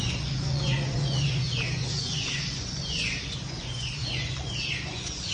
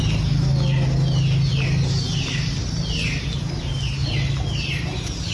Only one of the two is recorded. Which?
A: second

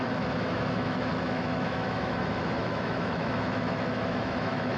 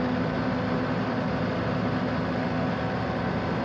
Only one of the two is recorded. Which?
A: second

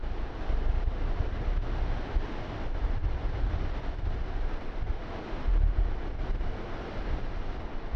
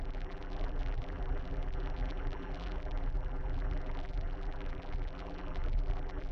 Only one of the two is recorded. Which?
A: first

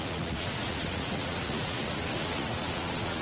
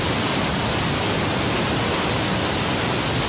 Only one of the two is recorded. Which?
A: second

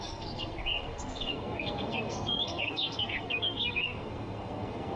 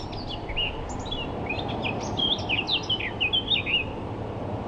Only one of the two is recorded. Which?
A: second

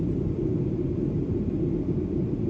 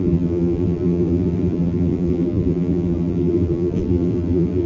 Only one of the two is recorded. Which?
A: first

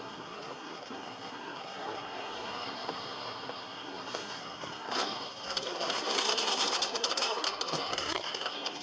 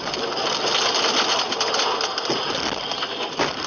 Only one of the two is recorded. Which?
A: second